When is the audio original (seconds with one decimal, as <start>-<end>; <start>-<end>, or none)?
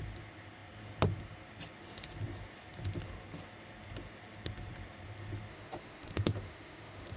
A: 0.0-5.5